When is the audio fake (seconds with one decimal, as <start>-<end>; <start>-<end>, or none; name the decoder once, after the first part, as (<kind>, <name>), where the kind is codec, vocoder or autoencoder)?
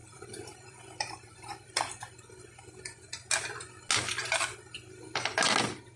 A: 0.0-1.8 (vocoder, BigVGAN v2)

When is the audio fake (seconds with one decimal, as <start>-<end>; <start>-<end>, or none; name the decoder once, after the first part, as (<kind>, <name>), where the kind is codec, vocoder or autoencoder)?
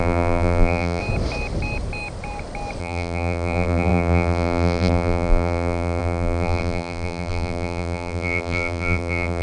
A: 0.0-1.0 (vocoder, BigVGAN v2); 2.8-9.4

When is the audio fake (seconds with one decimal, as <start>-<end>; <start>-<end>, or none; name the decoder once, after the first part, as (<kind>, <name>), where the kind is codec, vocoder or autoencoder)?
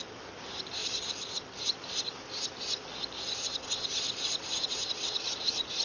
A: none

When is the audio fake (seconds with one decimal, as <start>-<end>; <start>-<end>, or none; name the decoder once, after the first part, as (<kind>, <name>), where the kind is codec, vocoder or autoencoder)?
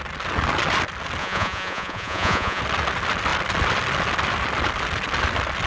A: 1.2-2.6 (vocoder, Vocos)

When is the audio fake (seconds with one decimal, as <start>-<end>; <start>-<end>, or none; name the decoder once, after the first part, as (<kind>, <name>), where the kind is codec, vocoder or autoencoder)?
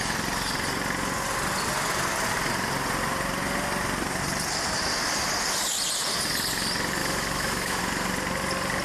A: 7.0-7.8 (autoencoder, DAC-VAE)